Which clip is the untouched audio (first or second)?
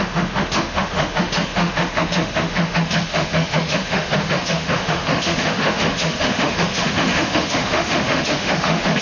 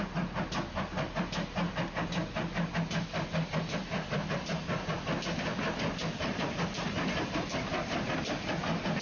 second